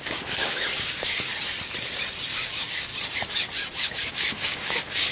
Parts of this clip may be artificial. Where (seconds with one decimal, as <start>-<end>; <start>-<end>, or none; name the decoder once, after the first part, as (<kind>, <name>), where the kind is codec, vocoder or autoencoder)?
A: 0.0-1.3 (codec, DAC); 2.3-2.9; 3.8-5.1